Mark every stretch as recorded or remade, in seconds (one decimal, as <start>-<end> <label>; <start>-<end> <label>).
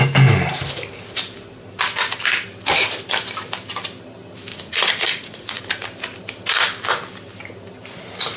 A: 0.0-4.5 recorded; 4.5-5.6 remade; 5.6-8.4 recorded